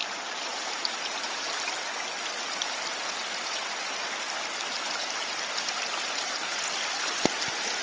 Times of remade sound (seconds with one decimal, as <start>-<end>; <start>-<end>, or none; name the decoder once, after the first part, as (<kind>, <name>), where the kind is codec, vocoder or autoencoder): 0.0-1.6 (vocoder, BigVGAN v2)